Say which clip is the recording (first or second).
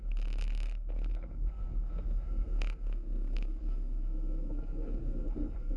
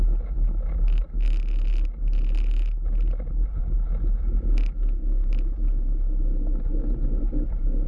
second